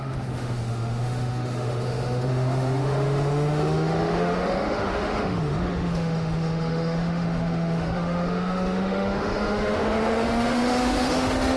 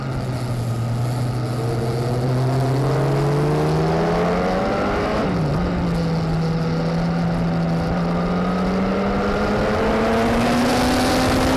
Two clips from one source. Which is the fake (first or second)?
first